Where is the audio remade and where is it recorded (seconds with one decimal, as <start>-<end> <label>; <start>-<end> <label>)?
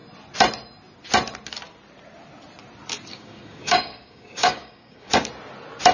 0.0-3.1 recorded; 3.1-5.1 remade; 5.1-5.9 recorded